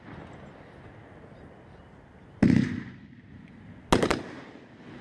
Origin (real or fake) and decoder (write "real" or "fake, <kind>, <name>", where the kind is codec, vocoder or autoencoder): real